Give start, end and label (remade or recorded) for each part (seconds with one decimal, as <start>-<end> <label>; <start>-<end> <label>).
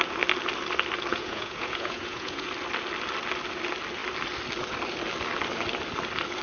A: 0.0-1.1 recorded; 1.1-2.5 remade; 2.5-6.4 recorded